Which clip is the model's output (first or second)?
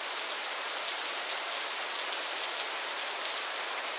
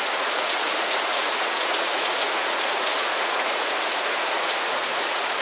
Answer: second